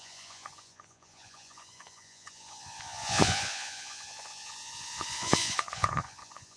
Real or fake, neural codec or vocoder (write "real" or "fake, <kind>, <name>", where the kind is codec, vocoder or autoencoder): fake, vocoder, Vocos